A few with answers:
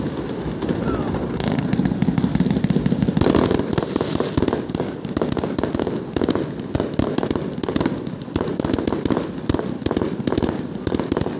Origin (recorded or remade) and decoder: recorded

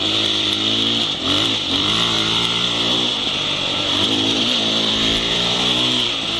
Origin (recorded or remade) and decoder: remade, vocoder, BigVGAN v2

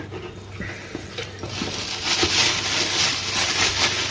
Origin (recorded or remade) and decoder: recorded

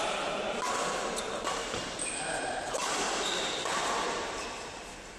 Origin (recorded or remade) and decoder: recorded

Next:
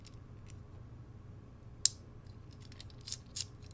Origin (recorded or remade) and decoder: recorded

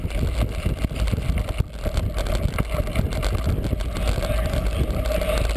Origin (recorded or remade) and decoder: recorded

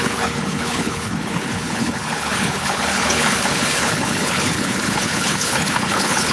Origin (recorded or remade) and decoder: remade, codec, HILCodec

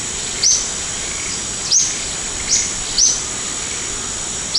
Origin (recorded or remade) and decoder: recorded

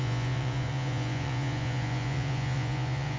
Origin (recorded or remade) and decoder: remade, vocoder, Vocos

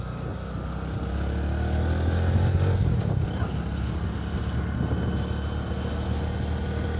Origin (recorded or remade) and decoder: recorded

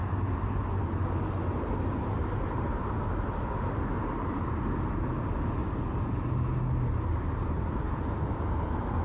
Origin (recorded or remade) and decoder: recorded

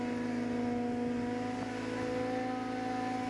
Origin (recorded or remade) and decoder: recorded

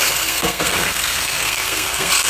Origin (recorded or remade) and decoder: remade, codec, SNAC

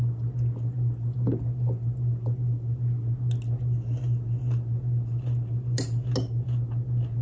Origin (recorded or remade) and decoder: recorded